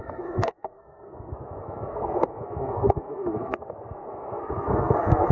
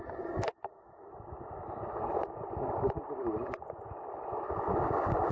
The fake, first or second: first